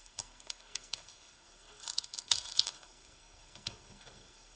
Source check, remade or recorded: remade